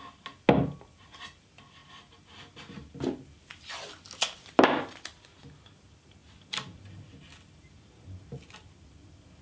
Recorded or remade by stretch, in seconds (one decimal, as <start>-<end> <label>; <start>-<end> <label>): 0.0-9.4 recorded